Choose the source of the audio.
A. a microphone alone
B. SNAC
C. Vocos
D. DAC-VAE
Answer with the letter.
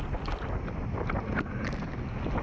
A